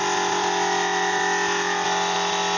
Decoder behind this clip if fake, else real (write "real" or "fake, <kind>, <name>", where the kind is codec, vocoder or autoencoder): real